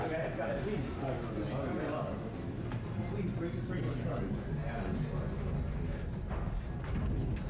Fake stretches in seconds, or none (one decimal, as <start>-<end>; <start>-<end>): none